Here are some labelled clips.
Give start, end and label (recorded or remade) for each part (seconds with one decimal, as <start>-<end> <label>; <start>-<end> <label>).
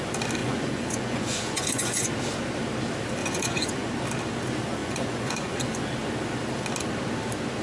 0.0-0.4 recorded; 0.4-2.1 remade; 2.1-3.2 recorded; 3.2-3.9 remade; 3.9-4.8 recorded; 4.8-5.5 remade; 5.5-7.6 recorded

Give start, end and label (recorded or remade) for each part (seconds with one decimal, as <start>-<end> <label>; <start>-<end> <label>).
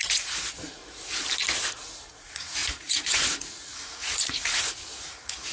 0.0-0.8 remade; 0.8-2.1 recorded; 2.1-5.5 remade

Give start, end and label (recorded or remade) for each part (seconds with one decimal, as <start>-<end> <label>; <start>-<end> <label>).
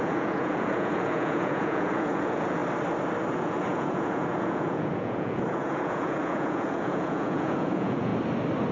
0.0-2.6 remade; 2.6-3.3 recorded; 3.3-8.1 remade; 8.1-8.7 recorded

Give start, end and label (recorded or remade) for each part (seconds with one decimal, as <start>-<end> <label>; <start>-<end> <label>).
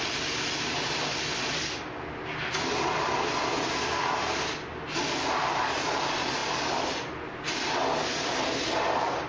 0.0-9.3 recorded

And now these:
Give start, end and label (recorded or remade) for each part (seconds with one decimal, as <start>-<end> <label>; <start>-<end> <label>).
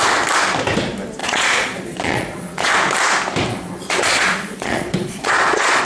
0.0-1.2 recorded; 1.2-2.7 remade; 2.7-3.5 recorded; 3.5-5.8 remade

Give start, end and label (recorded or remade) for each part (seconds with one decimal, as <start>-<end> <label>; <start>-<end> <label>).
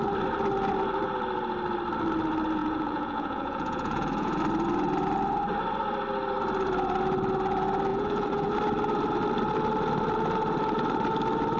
0.0-2.6 recorded; 2.6-4.4 remade; 4.4-7.9 recorded; 7.9-8.5 remade; 8.5-11.6 recorded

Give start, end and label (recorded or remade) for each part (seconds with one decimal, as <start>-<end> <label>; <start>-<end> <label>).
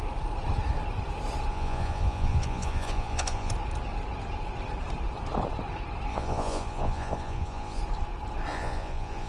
0.0-1.5 recorded; 1.5-3.5 remade; 3.5-6.1 recorded; 6.1-7.8 remade; 7.8-8.5 recorded; 8.5-9.3 remade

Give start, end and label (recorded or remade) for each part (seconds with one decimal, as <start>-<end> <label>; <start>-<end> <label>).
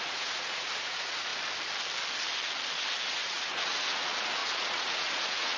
0.0-1.3 remade; 1.3-3.1 recorded; 3.1-5.6 remade